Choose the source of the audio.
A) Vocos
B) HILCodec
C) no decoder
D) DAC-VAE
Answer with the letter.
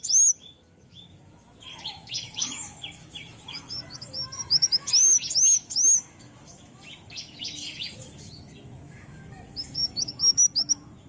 D